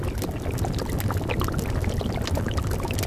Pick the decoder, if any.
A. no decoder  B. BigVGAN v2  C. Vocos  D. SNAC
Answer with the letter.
A